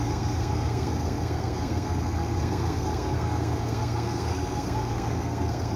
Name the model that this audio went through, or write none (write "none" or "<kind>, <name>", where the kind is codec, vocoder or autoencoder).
codec, SNAC